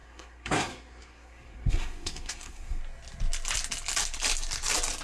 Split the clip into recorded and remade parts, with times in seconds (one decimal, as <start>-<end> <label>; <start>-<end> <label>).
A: 0.0-2.8 remade; 2.8-5.0 recorded